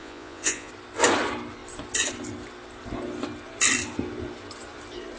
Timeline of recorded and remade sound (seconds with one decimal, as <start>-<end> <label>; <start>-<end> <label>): 0.0-0.7 remade; 0.7-5.2 recorded